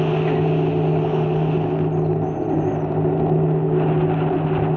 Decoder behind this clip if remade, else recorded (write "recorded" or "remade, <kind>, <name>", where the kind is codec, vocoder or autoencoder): recorded